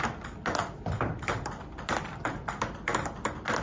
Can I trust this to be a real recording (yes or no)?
no